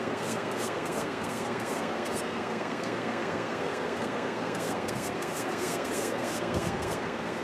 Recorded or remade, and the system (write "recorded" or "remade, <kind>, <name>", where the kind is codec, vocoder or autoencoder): remade, codec, SNAC